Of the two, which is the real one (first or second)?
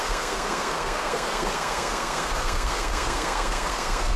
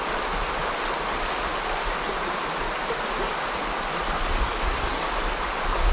second